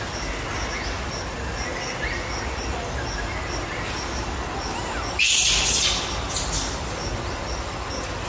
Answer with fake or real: real